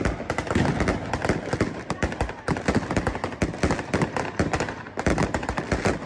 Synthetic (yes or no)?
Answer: no